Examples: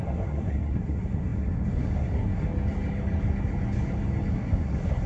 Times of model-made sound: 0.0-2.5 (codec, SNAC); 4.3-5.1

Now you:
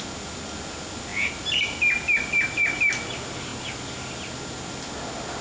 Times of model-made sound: none